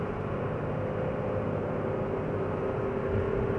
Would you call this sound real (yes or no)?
yes